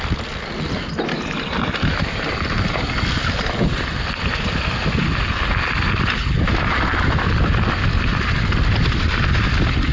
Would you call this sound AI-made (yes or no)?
no